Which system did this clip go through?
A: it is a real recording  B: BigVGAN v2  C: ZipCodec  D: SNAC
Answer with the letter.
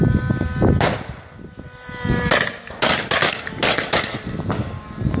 A